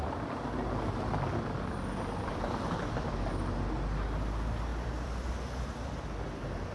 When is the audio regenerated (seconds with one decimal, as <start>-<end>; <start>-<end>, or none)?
2.3-3.1; 4.7-5.3